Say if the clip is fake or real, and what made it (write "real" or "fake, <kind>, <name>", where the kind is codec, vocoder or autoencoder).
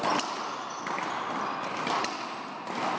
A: real